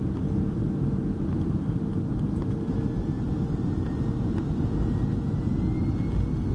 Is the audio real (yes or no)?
yes